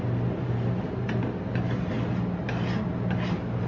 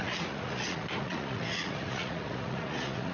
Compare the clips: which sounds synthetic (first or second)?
second